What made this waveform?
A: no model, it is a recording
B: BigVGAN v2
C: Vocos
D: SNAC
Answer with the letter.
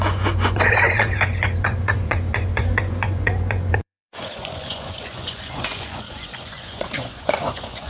C